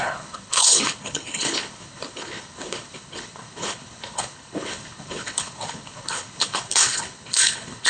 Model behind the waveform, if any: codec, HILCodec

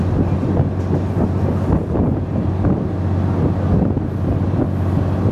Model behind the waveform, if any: none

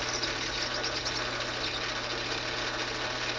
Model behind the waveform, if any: none